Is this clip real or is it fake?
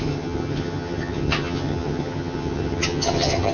fake